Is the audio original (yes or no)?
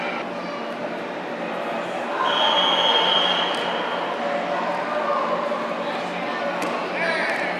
yes